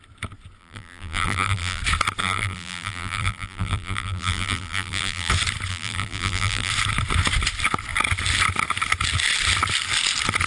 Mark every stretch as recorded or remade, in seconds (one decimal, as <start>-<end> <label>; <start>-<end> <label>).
0.0-0.6 recorded; 0.6-1.8 remade; 1.8-2.2 recorded; 2.2-5.3 remade; 5.3-5.7 recorded; 5.7-6.7 remade; 6.7-10.5 recorded